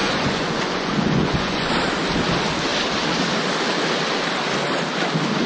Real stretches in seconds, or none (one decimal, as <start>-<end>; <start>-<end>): 1.7-5.5